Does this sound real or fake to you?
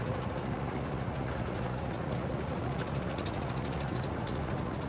fake